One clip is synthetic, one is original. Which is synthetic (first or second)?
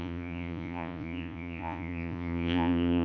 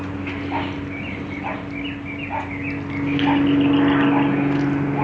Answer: first